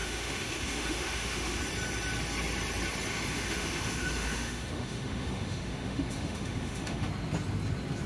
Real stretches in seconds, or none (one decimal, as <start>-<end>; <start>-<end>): 1.6-3.1; 7.1-8.1